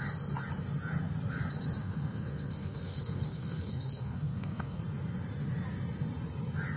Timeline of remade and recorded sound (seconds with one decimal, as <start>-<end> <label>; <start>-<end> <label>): 0.0-1.8 recorded; 1.8-4.8 remade; 4.8-6.8 recorded